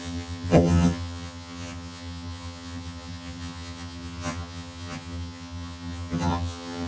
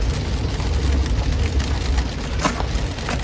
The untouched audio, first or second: second